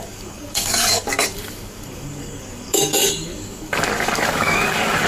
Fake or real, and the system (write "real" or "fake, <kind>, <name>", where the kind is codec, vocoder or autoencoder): fake, codec, DAC